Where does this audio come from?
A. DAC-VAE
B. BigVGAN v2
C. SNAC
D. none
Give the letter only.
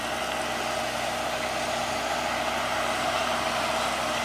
D